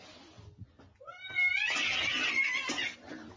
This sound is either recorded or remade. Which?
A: recorded